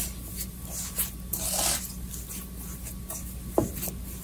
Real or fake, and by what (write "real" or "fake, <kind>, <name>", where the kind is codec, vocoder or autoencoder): real